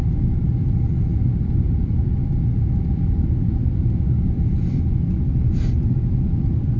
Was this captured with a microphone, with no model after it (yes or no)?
yes